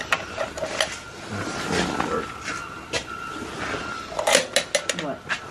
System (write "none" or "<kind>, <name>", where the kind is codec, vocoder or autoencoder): none